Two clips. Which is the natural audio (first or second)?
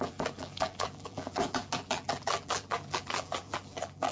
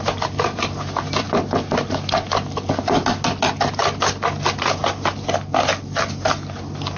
second